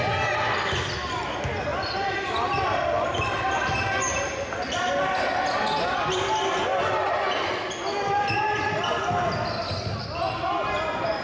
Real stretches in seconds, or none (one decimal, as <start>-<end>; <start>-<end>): 0.0-1.7; 3.4-11.2